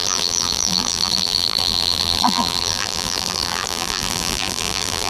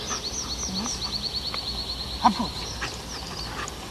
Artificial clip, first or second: first